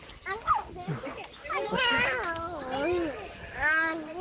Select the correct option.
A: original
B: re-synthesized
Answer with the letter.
A